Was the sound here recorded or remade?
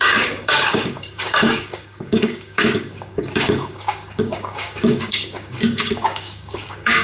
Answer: remade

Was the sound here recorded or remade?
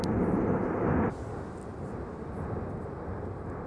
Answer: recorded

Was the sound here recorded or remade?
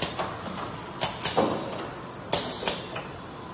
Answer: recorded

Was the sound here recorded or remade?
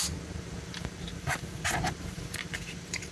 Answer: remade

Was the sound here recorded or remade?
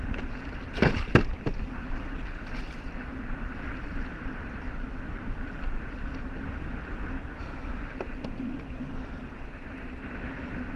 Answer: recorded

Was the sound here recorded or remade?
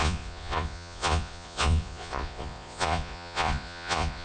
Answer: remade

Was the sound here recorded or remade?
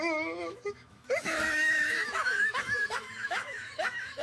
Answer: remade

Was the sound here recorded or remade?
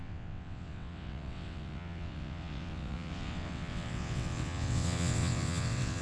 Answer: remade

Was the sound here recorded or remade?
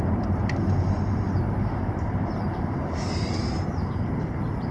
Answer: remade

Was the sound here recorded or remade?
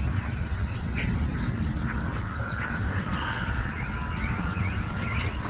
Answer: remade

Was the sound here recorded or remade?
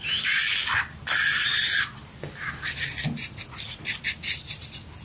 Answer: recorded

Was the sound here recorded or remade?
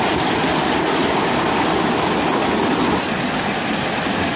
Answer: recorded